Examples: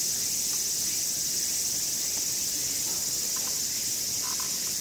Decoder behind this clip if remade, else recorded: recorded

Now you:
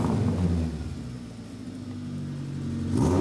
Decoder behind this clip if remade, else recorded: recorded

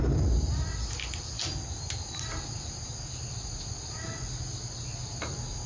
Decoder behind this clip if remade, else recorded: recorded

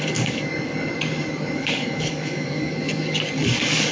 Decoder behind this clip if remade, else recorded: remade, codec, DAC